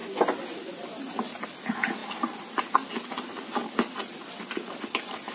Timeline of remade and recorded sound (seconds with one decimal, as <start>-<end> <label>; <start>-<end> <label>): 0.0-5.3 recorded